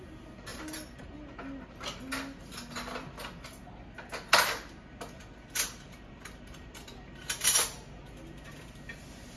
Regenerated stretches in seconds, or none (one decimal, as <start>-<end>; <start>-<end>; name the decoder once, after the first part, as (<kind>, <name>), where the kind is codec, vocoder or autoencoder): 0.5-1.0 (vocoder, BigVGAN v2)